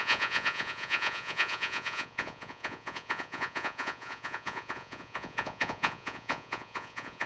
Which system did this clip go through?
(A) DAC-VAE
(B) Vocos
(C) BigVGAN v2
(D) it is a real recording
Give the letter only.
B